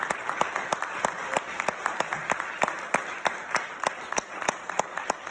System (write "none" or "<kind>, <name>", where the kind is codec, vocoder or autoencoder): none